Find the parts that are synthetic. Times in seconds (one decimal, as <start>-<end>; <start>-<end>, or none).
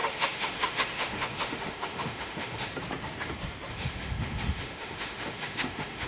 0.0-2.7; 3.7-6.1